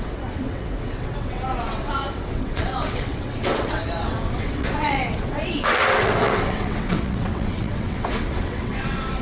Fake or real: fake